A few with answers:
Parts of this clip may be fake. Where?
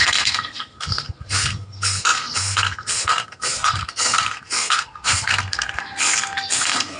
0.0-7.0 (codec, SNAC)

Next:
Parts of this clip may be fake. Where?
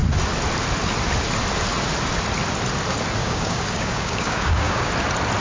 3.2-4.9 (codec, DAC)